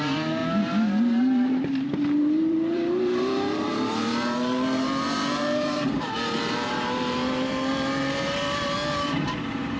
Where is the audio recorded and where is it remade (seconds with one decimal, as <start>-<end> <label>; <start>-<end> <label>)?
0.0-0.4 remade; 0.4-1.0 recorded; 1.0-9.8 remade